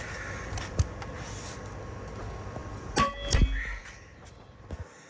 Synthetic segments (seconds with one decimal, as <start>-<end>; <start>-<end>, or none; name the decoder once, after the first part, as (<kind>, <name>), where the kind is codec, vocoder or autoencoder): none